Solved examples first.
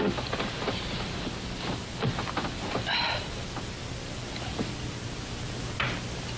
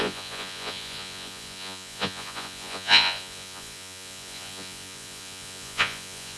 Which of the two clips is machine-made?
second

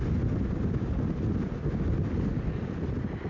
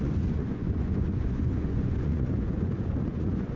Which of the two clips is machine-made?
second